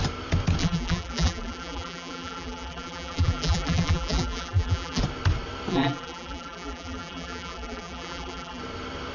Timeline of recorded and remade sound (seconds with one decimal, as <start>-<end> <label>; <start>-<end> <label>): 0.0-0.6 recorded; 0.6-5.0 remade; 5.0-5.7 recorded; 5.7-8.6 remade; 8.6-9.1 recorded